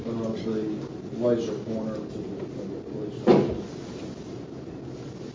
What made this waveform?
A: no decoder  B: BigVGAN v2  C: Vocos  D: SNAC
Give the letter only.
A